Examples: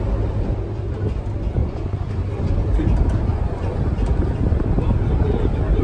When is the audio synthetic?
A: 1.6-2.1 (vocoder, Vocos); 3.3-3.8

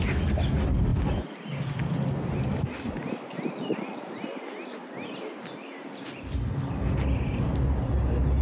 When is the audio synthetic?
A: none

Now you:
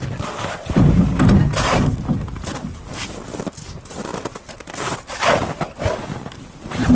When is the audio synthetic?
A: none